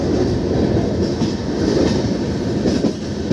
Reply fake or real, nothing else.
real